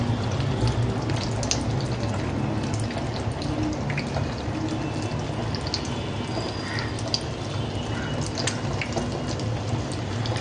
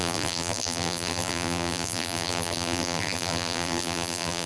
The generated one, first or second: second